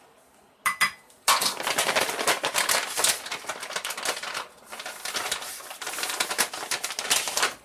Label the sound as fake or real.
real